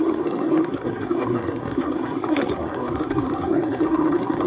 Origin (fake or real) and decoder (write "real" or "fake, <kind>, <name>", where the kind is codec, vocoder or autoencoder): fake, codec, SNAC